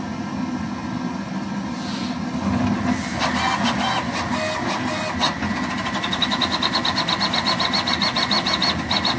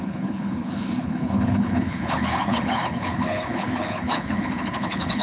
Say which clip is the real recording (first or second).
first